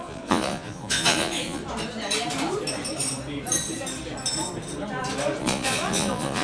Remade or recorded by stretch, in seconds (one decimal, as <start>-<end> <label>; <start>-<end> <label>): 0.0-1.6 remade; 1.6-5.4 recorded; 5.4-6.4 remade